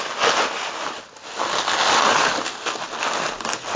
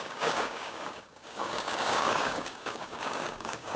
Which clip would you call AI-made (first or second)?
second